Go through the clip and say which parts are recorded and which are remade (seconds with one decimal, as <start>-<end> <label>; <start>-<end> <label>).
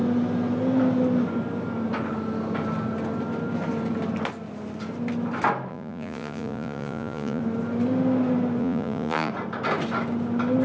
0.0-5.7 recorded; 5.7-7.4 remade; 7.4-8.6 recorded; 8.6-9.3 remade; 9.3-10.6 recorded